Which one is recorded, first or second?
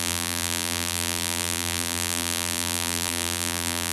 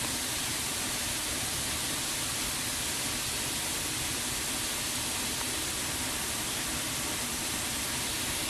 second